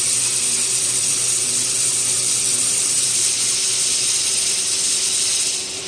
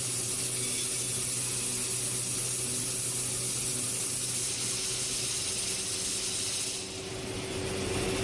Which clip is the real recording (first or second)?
second